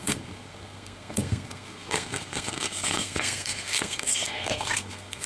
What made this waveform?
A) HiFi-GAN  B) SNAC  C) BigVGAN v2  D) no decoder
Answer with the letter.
B